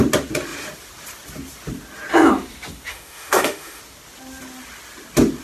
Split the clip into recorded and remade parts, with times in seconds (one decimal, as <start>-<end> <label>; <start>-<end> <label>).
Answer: 0.0-2.9 recorded; 2.9-3.8 remade; 3.8-5.4 recorded